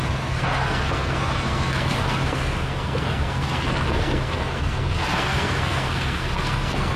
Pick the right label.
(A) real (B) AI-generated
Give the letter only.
B